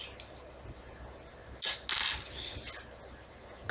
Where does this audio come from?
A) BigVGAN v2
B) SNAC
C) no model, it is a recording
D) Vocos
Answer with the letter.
C